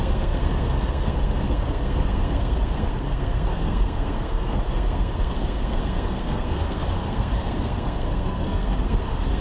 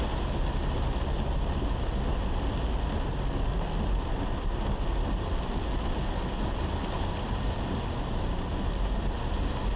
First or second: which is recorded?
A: second